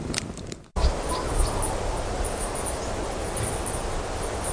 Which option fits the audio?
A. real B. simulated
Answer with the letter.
A